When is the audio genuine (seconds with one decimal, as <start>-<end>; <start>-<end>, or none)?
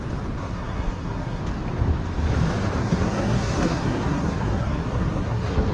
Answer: 0.0-0.4; 1.4-2.8